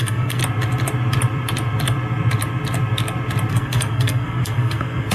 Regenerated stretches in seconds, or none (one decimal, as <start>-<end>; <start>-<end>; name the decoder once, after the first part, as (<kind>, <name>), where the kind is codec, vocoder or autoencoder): 0.0-0.4 (codec, SNAC); 3.5-5.1